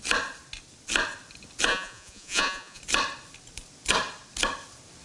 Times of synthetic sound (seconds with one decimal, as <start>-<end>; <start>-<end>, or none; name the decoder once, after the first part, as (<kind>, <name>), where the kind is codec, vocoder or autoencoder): 1.7-2.8 (vocoder, Vocos)